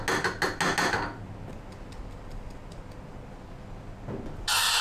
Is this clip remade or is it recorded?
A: recorded